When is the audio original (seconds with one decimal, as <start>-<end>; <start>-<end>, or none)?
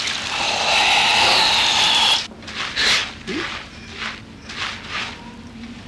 0.0-1.1; 2.1-5.9